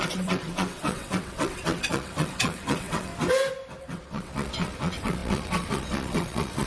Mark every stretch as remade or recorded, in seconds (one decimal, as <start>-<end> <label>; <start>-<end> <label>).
0.0-3.1 remade; 3.1-3.8 recorded; 3.8-6.7 remade